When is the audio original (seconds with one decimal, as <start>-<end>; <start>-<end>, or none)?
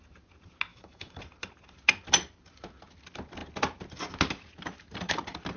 0.0-0.7; 1.2-5.6